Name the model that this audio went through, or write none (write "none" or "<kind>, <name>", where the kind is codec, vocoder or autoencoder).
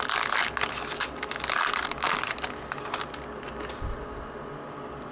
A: none